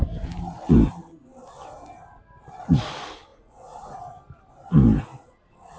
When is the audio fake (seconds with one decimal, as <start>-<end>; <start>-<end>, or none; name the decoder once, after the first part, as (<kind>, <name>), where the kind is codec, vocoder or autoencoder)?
3.3-4.0 (vocoder, Vocos)